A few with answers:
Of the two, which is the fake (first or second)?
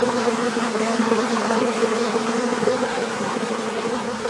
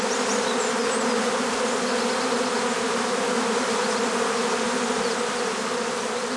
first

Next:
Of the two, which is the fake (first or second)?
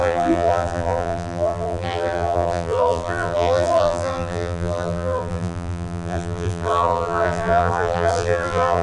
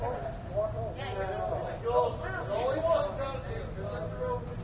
first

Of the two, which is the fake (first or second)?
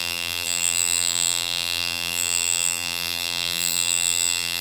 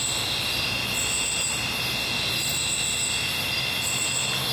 first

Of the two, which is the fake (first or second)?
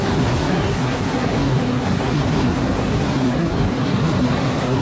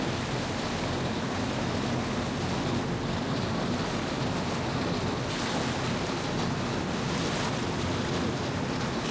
first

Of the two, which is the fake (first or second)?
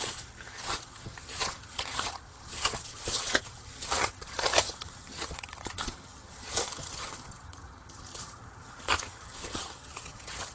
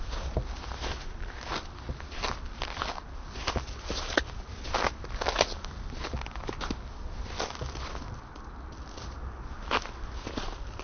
first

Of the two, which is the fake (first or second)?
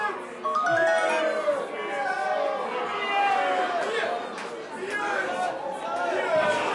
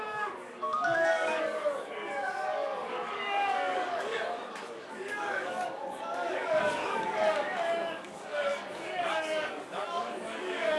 second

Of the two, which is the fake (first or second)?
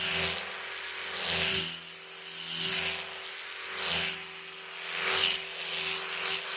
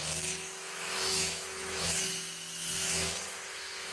second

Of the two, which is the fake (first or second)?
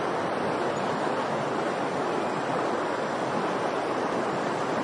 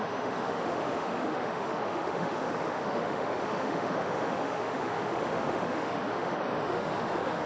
second